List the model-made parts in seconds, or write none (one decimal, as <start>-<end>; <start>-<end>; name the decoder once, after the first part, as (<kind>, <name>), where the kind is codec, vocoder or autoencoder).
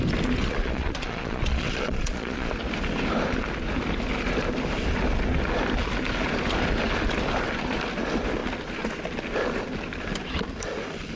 0.4-2.5 (vocoder, Vocos)